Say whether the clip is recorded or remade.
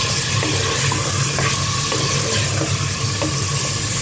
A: recorded